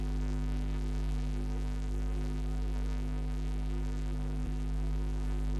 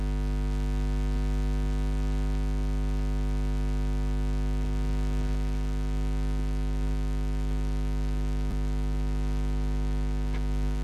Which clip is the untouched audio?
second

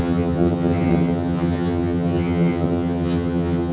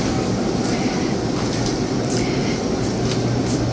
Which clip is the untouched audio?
second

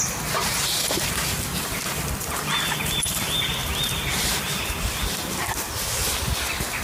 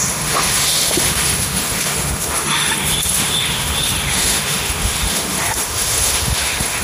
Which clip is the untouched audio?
first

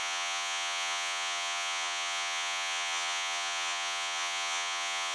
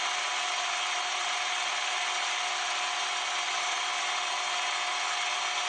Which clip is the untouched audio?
second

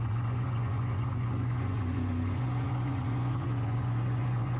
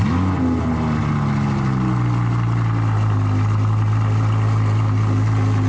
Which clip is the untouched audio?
second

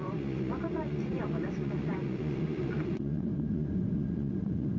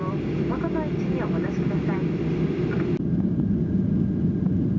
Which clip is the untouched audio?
second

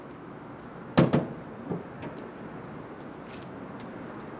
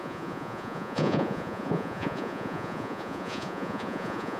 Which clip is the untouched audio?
first